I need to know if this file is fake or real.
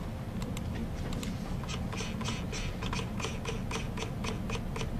real